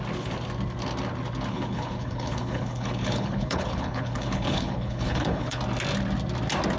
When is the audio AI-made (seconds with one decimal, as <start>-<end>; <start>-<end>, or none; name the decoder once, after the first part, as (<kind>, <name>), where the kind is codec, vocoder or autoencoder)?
1.5-5.6 (codec, HILCodec)

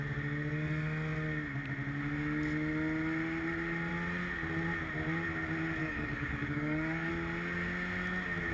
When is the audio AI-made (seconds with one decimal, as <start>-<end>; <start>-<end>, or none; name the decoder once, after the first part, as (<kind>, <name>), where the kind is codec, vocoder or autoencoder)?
5.8-7.1 (codec, DAC)

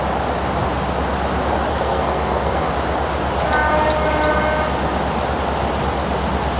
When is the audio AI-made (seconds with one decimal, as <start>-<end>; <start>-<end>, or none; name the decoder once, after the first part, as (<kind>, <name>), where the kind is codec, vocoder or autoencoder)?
1.7-2.7 (codec, SNAC)